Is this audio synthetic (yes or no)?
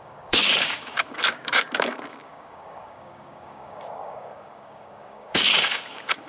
yes